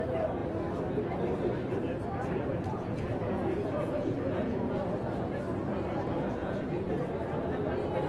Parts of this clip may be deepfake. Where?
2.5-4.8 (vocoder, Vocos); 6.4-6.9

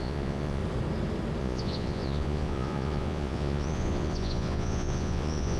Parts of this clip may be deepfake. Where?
0.0-0.6 (vocoder, Vocos); 1.4-5.6

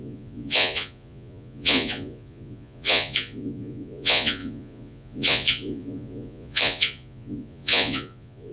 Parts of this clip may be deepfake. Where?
0.0-8.5 (vocoder, Vocos)

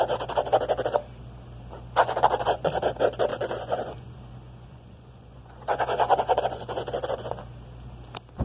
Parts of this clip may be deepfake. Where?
2.0-2.7 (vocoder, Vocos); 3.3-7.4

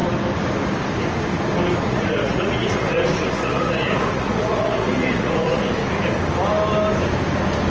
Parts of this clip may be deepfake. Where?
1.8-5.8 (vocoder, Vocos)